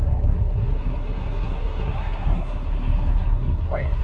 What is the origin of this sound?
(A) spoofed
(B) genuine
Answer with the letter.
A